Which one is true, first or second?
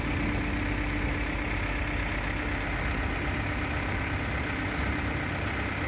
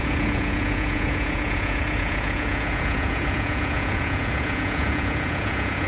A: first